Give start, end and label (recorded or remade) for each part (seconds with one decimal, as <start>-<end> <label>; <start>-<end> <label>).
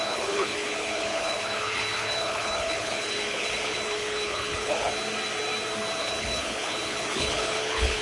0.0-4.9 remade; 4.9-6.0 recorded; 6.0-8.0 remade